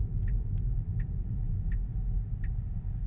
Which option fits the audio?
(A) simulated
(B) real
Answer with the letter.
B